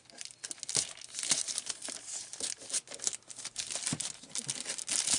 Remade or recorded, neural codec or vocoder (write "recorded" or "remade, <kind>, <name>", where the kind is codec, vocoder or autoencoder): recorded